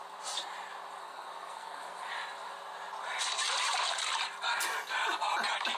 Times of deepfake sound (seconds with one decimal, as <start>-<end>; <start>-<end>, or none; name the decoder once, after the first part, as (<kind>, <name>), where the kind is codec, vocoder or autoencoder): 1.0-2.1 (codec, SNAC)